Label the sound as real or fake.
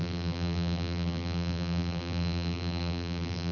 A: fake